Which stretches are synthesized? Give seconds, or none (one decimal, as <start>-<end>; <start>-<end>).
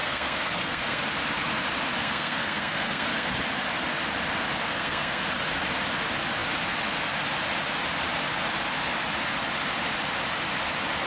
0.0-1.0; 2.0-3.3; 4.6-5.2